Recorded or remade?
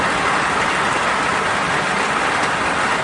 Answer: recorded